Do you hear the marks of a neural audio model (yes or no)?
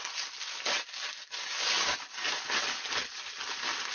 no